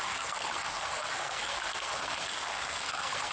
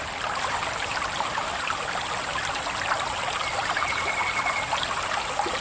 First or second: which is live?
second